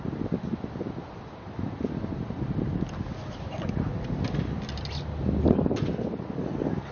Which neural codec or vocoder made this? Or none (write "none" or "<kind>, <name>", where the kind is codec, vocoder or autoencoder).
none